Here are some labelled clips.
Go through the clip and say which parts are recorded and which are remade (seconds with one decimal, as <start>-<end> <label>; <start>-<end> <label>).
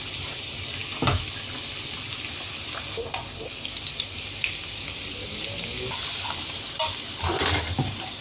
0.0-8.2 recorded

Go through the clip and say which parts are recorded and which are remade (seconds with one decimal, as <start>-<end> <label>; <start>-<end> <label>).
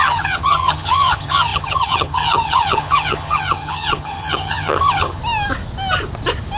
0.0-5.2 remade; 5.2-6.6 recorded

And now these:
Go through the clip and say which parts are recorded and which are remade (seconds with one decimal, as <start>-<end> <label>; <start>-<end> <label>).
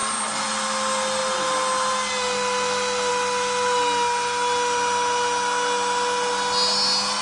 0.0-7.2 recorded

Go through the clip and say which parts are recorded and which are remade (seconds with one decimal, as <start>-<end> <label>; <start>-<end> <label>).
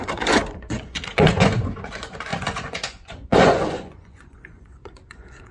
0.0-5.5 remade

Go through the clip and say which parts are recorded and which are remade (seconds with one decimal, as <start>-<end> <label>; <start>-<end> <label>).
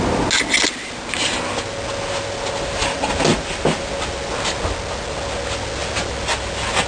0.0-6.9 recorded